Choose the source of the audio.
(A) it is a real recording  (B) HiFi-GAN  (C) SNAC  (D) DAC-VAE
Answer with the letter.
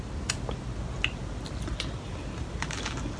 A